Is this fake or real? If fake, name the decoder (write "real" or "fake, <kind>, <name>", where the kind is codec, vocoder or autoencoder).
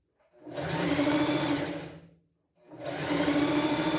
fake, vocoder, BigVGAN v2